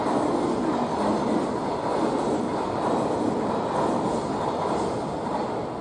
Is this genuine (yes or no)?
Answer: yes